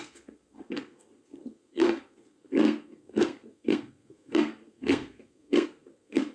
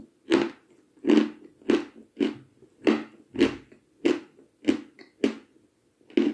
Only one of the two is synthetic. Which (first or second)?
first